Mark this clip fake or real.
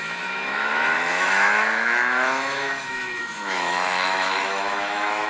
fake